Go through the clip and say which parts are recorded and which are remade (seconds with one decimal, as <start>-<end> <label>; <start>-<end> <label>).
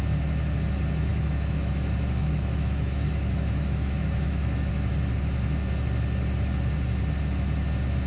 0.0-1.1 recorded; 1.1-4.7 remade; 4.7-8.1 recorded